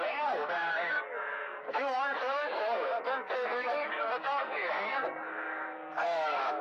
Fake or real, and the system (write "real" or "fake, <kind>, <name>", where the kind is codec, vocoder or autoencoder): fake, codec, SNAC